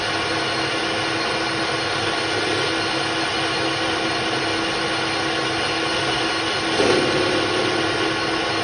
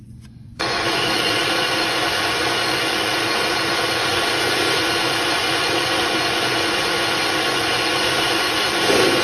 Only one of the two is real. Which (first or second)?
first